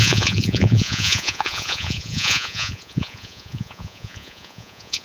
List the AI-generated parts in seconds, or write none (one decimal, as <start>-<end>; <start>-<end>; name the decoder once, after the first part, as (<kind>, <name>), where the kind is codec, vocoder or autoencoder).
0.0-5.0 (vocoder, Vocos)